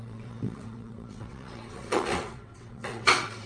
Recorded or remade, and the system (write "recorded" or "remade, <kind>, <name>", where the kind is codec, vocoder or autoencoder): remade, vocoder, WaveNeXt